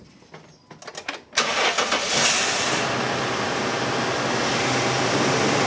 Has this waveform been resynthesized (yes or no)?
no